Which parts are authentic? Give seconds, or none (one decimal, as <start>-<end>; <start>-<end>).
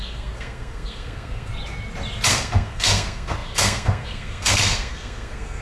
1.5-2.3